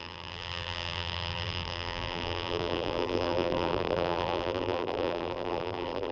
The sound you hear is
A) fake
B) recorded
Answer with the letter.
A